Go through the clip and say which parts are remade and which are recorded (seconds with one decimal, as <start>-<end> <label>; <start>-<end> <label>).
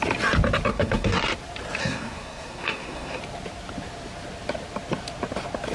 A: 0.0-0.7 recorded; 0.7-1.2 remade; 1.2-1.8 recorded; 1.8-3.2 remade; 3.2-5.7 recorded